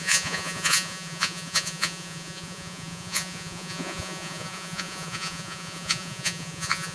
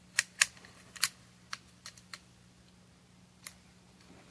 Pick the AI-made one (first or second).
first